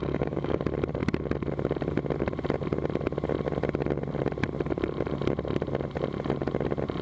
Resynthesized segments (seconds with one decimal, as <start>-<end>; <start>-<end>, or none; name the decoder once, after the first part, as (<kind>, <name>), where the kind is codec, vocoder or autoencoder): 0.0-0.6 (codec, DAC)